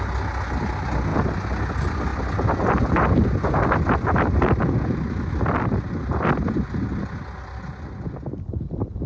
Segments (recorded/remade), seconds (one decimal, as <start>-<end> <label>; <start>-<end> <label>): 0.0-9.1 recorded